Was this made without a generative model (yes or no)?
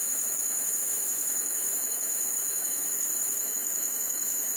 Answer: no